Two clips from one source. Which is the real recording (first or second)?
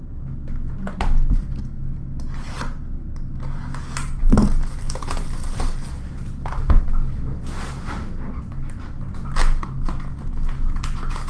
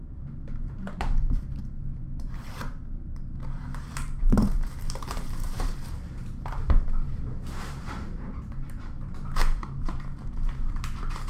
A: first